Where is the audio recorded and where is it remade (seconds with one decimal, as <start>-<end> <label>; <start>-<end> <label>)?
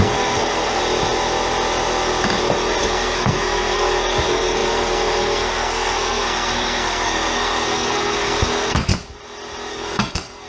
0.0-0.8 remade; 0.8-2.8 recorded; 2.8-8.9 remade; 8.9-9.7 recorded; 9.7-10.5 remade